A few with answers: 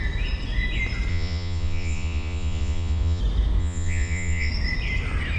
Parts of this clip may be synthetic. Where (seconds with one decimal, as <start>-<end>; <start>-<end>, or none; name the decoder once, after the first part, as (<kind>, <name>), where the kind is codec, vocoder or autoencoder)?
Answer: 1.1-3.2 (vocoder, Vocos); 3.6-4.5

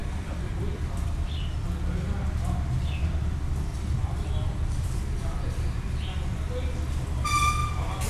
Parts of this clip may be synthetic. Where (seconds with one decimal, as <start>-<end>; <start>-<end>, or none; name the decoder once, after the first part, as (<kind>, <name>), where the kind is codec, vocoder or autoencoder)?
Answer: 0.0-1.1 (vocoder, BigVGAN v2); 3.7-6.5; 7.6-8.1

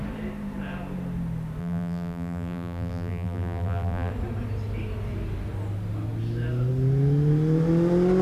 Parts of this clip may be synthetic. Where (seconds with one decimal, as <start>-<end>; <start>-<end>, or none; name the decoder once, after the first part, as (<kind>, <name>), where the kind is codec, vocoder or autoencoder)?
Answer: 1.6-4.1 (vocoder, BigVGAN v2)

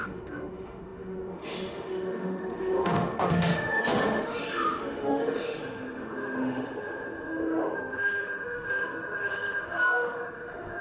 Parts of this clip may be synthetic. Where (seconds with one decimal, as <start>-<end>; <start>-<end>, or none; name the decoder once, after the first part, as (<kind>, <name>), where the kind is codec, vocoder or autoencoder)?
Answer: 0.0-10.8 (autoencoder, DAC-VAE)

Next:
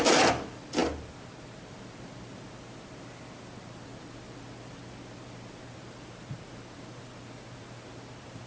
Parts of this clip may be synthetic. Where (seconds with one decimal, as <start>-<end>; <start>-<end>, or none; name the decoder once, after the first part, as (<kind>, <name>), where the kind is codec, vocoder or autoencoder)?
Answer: none

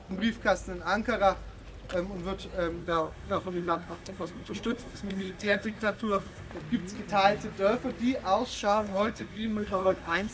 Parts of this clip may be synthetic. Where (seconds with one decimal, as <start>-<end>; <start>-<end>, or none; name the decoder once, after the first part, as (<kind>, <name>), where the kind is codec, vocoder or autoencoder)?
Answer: 2.8-6.5 (codec, SNAC); 8.5-10.3

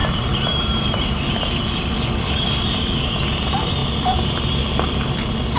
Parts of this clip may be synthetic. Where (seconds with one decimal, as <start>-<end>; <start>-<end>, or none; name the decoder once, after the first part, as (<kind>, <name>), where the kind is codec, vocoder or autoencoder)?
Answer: none